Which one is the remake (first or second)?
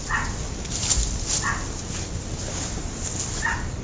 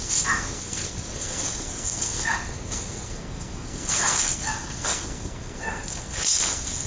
second